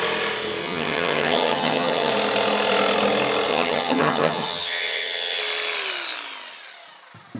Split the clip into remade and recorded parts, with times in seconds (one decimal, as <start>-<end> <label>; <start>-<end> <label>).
0.0-0.6 recorded; 0.6-2.1 remade; 2.1-3.5 recorded; 3.5-5.4 remade; 5.4-7.4 recorded